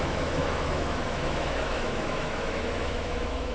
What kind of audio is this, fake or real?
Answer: fake